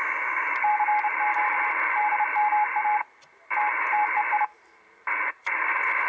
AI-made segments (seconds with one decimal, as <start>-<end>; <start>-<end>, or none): none